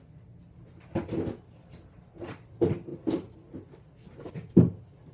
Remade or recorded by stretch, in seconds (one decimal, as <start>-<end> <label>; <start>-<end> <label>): 0.0-5.1 recorded